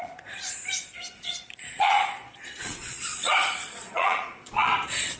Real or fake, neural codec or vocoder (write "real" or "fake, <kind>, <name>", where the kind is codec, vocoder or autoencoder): fake, vocoder, Vocos